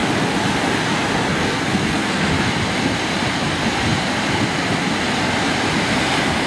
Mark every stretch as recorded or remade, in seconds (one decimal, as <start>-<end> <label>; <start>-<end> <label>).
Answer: 0.0-1.3 recorded; 1.3-2.3 remade; 2.3-6.5 recorded